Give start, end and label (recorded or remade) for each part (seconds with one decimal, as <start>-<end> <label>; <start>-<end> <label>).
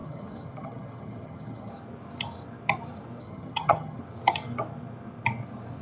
0.0-1.7 remade; 1.7-3.2 recorded; 3.2-4.0 remade; 4.0-5.8 recorded